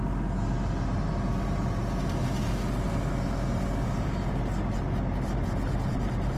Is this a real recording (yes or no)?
yes